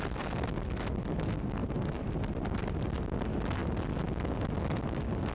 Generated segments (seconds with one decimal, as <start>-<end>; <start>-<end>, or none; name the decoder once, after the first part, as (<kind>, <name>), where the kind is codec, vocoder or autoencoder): 1.6-3.0 (vocoder, BigVGAN v2)